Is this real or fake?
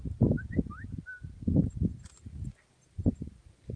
real